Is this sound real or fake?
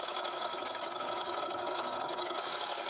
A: fake